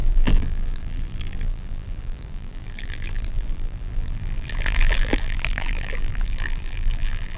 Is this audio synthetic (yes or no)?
yes